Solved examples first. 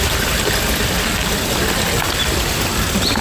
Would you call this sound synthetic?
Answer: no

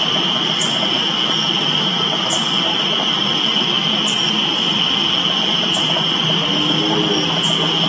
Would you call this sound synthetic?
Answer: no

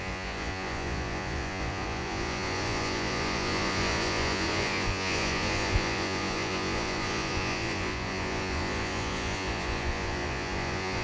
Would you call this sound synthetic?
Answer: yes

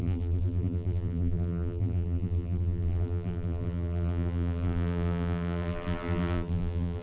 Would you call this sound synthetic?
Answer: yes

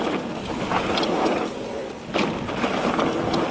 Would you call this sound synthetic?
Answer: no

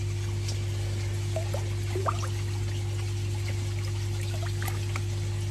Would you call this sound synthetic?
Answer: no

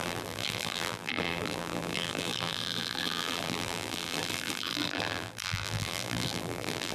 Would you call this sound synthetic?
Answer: yes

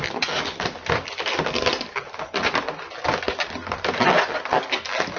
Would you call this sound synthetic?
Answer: no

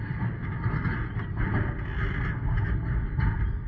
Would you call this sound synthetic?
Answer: no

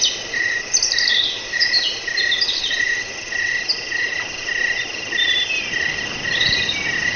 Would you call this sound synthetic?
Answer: no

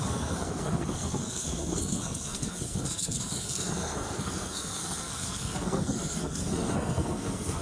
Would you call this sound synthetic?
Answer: yes